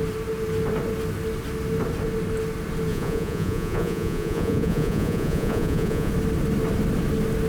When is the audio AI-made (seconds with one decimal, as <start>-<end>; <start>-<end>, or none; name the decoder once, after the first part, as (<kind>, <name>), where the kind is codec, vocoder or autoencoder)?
2.9-6.1 (vocoder, Vocos)